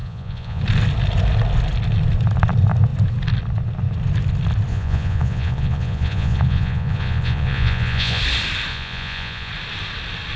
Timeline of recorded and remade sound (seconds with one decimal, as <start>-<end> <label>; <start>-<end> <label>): 0.0-0.6 remade; 0.6-4.7 recorded; 4.7-8.2 remade; 8.2-8.7 recorded; 8.7-9.5 remade; 9.5-10.4 recorded